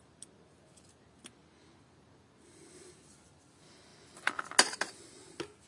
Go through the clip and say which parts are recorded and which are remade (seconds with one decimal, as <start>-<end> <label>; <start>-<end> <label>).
0.0-5.7 recorded